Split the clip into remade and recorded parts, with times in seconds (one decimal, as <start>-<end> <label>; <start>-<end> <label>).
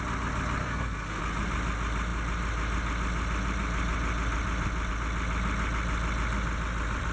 0.0-0.6 recorded; 0.6-1.2 remade; 1.2-7.1 recorded